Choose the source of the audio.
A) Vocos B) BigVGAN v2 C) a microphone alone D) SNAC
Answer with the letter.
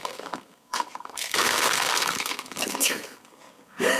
D